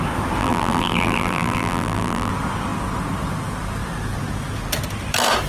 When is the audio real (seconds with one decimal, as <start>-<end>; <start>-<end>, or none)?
0.0-0.4; 2.3-5.5